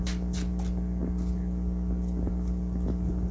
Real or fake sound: real